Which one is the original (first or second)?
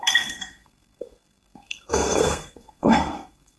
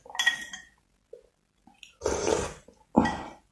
second